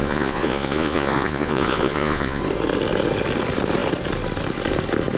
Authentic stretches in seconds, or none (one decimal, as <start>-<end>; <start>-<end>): 2.4-5.2